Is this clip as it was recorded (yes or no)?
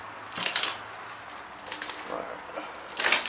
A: yes